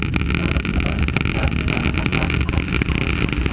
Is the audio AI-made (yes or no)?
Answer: no